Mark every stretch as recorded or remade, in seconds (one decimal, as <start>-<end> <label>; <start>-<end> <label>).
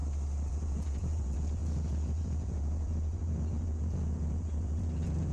0.0-0.5 recorded; 0.5-5.3 remade